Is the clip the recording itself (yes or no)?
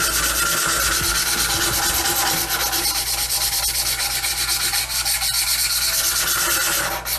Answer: yes